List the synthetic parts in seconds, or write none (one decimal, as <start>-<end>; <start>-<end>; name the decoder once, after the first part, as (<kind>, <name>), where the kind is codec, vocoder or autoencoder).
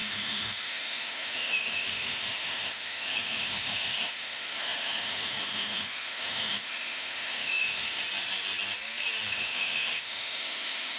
0.0-8.0 (autoencoder, DAC-VAE); 9.3-11.0